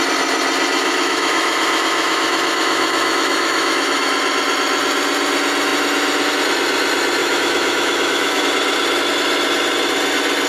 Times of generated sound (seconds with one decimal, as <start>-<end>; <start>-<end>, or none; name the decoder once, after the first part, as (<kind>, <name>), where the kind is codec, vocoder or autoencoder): 0.8-4.1 (autoencoder, DAC-VAE); 7.2-8.4